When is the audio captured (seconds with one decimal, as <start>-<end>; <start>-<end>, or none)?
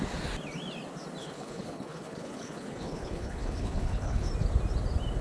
0.0-1.2; 4.3-5.2